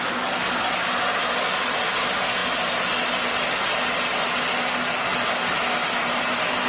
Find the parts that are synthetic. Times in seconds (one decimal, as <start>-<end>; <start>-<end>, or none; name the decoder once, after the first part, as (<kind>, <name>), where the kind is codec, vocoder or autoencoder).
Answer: none